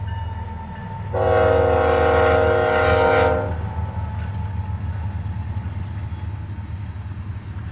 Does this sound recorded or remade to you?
recorded